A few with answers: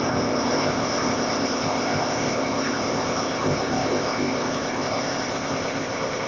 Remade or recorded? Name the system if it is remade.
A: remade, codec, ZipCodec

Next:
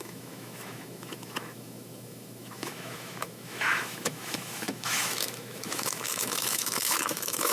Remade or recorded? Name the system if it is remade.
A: remade, autoencoder, DAC-VAE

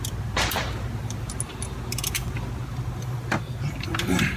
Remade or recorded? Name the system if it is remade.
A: recorded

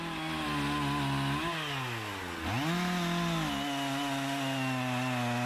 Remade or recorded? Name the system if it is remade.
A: recorded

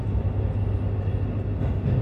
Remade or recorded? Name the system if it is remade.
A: recorded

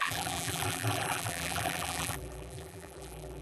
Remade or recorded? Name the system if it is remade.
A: remade, vocoder, BigVGAN v2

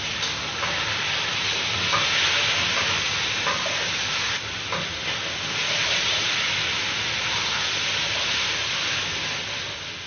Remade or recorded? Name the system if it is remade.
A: recorded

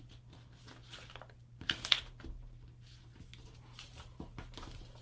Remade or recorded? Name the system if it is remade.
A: recorded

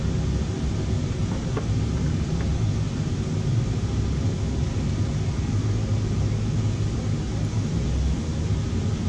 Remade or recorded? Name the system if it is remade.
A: recorded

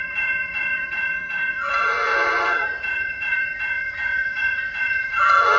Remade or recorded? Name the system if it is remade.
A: remade, vocoder, Vocos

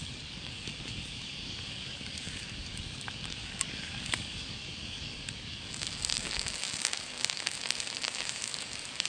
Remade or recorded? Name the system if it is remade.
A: remade, codec, DAC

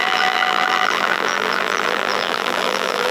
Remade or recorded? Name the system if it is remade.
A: remade, vocoder, BigVGAN v2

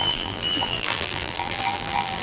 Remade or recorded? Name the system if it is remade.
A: remade, vocoder, BigVGAN v2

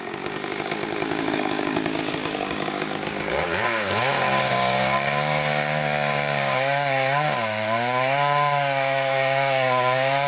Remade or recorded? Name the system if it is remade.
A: remade, codec, DAC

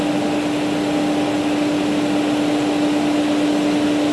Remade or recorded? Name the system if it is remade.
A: recorded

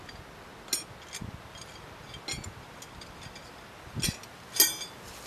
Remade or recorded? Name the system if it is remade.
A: recorded